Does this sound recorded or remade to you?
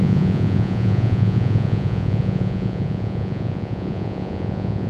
remade